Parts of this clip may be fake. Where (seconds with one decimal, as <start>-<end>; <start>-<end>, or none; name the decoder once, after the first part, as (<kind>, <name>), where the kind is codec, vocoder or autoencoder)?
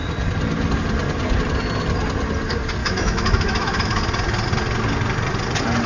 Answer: 2.8-4.0 (autoencoder, DAC-VAE)